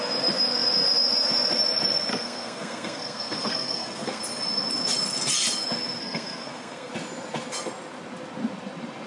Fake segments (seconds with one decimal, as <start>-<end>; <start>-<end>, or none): 2.1-4.2; 6.0-6.9